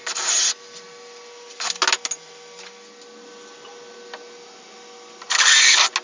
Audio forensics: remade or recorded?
recorded